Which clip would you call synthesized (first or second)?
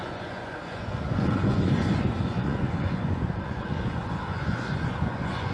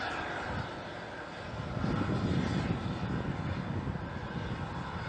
first